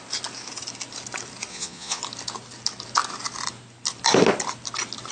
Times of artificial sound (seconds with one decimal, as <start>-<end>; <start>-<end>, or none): 1.5-2.0